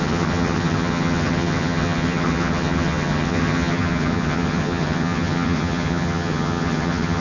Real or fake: fake